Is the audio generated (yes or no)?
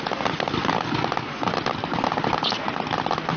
no